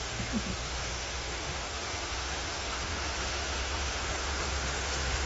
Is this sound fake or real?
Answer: fake